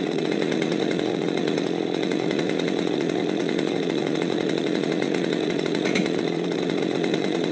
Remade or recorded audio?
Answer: remade